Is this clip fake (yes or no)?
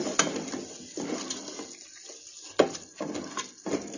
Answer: no